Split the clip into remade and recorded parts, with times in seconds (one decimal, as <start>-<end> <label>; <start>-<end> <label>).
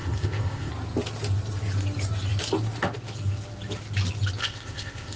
0.0-0.7 remade; 0.7-4.4 recorded; 4.4-5.2 remade